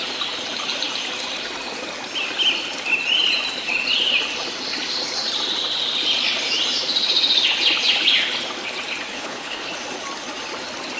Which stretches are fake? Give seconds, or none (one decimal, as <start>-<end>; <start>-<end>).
9.1-9.7